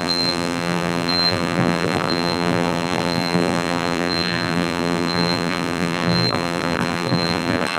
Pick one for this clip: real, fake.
fake